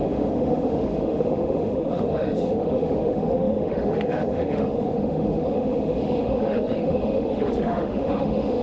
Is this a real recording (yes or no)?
no